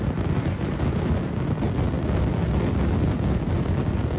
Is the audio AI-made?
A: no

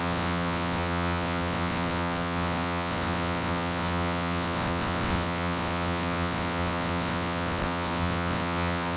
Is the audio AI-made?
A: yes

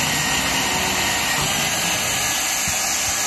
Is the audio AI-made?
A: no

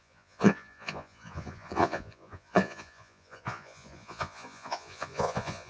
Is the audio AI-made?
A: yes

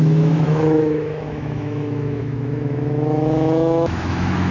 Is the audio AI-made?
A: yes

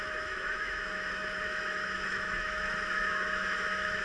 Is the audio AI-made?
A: yes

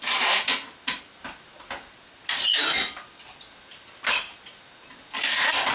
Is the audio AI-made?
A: no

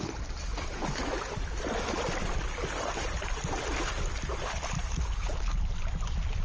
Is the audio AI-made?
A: no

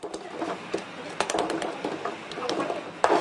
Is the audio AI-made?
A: no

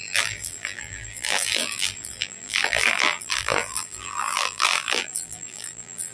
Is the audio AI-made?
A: yes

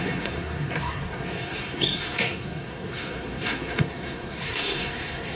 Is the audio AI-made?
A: yes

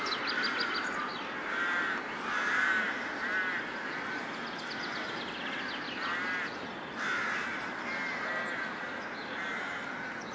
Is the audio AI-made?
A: no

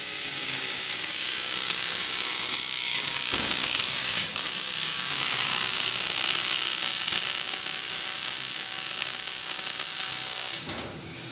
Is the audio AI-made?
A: yes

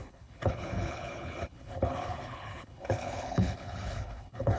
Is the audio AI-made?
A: yes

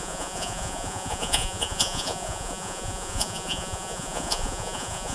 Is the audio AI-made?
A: yes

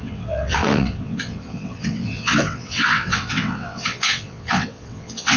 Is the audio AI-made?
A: yes